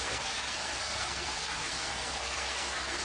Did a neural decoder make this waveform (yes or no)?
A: yes